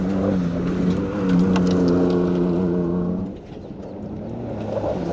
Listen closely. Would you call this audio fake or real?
real